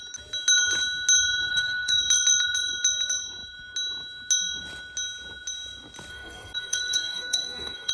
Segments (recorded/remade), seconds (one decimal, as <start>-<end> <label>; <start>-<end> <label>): 0.0-1.5 recorded; 1.5-2.0 remade; 2.0-6.1 recorded; 6.1-7.9 remade